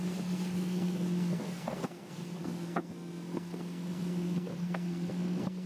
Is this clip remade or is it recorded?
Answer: remade